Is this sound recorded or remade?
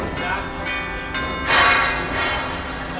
recorded